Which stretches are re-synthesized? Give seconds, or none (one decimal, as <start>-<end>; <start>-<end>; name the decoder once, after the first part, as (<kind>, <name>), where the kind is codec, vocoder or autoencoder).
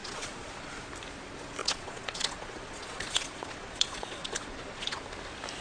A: 0.0-0.8 (vocoder, Vocos); 1.6-5.0